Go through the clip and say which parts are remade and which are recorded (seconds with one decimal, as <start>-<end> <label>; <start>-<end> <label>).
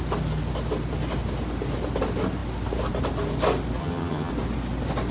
0.0-3.8 recorded; 3.8-4.3 remade; 4.3-5.1 recorded